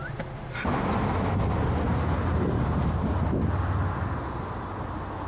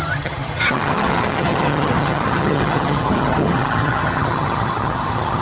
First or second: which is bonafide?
first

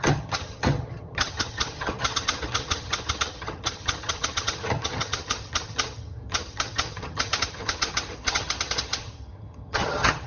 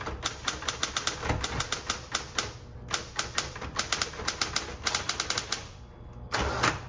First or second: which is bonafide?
second